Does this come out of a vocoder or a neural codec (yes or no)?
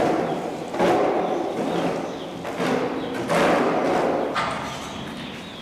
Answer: no